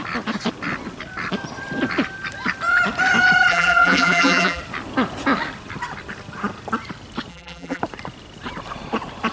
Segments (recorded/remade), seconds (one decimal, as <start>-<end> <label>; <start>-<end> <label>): 0.0-3.5 recorded; 3.5-4.6 remade; 4.6-7.3 recorded; 7.3-7.8 remade; 7.8-9.3 recorded

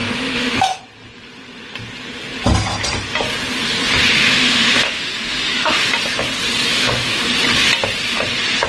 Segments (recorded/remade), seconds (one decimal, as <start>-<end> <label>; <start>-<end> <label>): 0.0-0.8 remade; 0.8-4.2 recorded; 4.2-5.9 remade; 5.9-6.7 recorded; 6.7-7.2 remade; 7.2-8.7 recorded